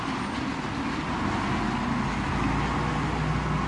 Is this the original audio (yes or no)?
yes